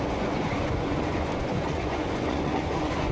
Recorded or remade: remade